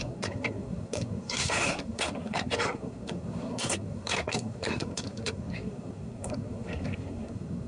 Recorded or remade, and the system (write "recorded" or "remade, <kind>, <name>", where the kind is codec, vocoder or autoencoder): remade, codec, SNAC